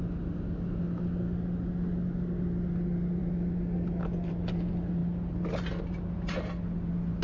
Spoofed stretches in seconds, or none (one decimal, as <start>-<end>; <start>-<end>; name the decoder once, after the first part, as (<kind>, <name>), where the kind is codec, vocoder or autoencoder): none

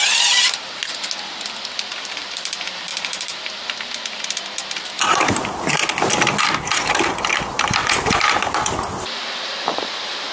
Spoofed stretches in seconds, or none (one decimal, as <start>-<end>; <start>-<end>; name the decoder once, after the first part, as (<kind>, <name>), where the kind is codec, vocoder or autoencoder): 0.0-0.8 (vocoder, BigVGAN v2); 1.9-5.8; 6.6-10.3

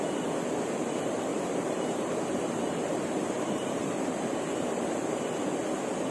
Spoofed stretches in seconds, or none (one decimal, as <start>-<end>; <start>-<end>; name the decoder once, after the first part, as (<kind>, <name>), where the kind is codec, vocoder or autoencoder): 1.3-4.8 (vocoder, BigVGAN v2)

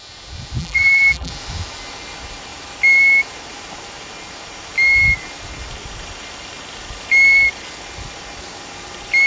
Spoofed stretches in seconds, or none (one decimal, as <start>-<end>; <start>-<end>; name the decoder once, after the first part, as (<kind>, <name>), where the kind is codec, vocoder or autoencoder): 0.6-1.3 (vocoder, BigVGAN v2)

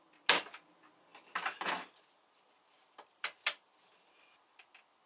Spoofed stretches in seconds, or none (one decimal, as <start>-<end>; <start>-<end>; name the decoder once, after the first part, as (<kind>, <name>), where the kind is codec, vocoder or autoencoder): 1.1-3.9 (vocoder, BigVGAN v2)